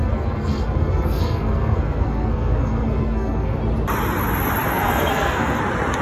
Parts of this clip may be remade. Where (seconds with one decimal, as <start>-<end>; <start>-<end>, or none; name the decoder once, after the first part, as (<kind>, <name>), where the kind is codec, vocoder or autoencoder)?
0.0-3.6 (codec, SNAC); 4.7-5.6